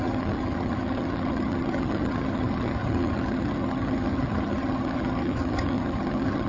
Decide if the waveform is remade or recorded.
remade